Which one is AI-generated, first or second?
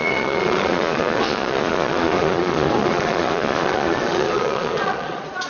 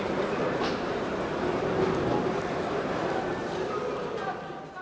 first